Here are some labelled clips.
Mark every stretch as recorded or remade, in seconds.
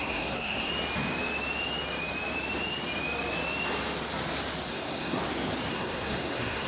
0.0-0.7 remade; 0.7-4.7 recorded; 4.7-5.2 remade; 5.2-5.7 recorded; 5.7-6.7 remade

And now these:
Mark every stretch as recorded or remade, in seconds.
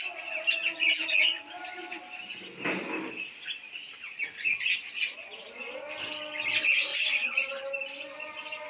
0.0-8.7 recorded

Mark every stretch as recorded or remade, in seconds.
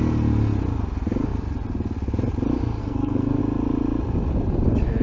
0.0-2.8 recorded; 2.8-3.4 remade; 3.4-5.0 recorded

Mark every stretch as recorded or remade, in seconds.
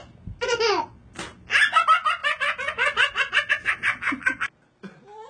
0.0-5.3 recorded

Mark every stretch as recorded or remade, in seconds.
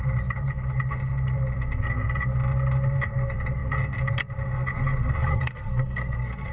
0.0-5.3 recorded; 5.3-6.5 remade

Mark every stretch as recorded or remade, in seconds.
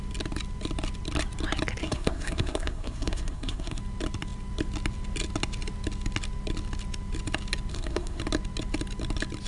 0.0-1.8 recorded; 1.8-3.8 remade; 3.8-7.7 recorded; 7.7-8.2 remade; 8.2-9.5 recorded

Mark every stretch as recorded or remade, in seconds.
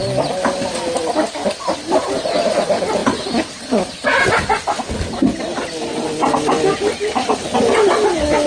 0.0-8.5 recorded